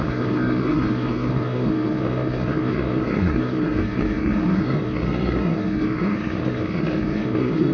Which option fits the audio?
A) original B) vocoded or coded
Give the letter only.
B